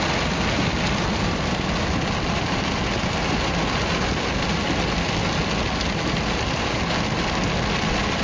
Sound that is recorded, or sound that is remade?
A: recorded